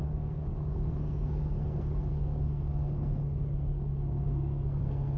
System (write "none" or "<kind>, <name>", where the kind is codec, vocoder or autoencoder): codec, SNAC